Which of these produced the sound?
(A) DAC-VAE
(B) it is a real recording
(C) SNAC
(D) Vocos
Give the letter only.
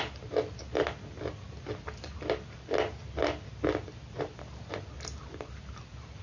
B